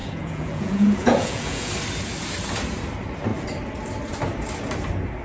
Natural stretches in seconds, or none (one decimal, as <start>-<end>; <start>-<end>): 1.7-5.2